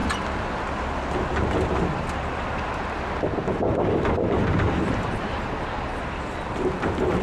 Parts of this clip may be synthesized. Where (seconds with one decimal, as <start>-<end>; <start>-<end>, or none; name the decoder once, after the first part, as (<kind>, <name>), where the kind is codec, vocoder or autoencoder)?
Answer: 5.9-6.7 (vocoder, BigVGAN v2)